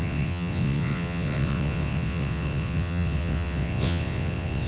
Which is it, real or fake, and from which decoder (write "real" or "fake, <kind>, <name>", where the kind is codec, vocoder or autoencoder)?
fake, vocoder, WaveNeXt